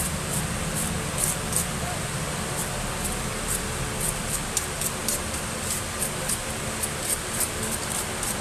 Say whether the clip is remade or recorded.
remade